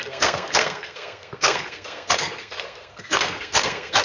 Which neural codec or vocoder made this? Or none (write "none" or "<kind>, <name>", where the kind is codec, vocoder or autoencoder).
codec, SNAC